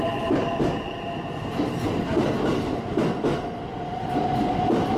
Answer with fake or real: fake